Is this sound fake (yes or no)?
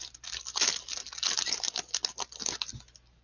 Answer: no